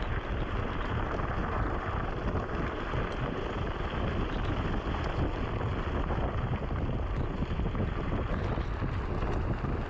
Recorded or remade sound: recorded